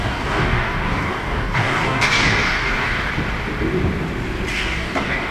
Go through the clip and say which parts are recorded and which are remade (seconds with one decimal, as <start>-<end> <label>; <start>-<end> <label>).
0.0-3.1 remade; 3.1-4.5 recorded; 4.5-5.3 remade